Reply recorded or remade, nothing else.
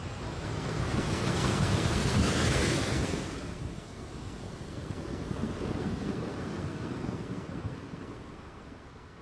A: remade